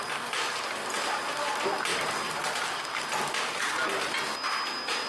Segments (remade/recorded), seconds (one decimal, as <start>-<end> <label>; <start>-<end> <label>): 0.0-5.1 recorded